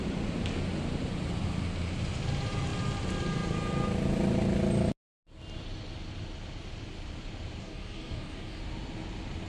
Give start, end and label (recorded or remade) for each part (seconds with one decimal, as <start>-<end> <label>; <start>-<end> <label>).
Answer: 0.0-7.6 recorded; 7.6-8.6 remade; 8.6-9.5 recorded